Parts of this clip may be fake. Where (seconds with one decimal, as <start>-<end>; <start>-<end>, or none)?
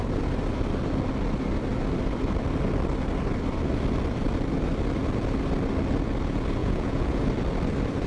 6.6-7.2